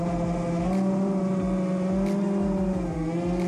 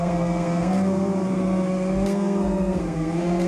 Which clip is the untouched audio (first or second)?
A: first